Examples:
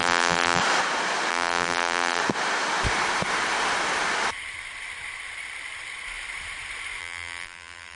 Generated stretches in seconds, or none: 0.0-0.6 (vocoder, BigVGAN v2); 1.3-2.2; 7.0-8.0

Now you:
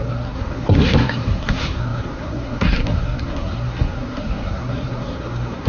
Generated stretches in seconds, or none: 0.0-5.7 (codec, SNAC)